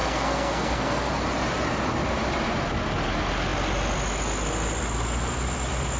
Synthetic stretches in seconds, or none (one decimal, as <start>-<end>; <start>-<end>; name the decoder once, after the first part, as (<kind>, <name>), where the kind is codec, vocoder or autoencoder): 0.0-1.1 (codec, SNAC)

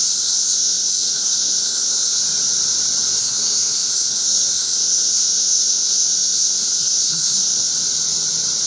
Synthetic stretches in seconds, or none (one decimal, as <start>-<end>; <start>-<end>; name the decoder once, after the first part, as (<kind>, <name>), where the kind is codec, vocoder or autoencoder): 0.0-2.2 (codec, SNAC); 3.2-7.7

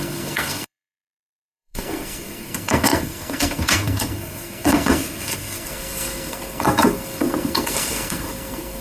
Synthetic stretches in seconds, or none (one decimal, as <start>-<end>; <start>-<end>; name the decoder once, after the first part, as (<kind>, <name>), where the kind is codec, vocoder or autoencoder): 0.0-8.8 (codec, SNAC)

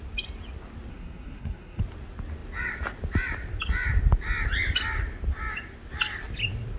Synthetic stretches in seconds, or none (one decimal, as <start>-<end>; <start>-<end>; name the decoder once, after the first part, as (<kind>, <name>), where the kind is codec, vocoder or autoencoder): 0.9-1.8 (codec, SNAC)